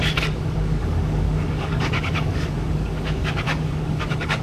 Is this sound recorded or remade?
remade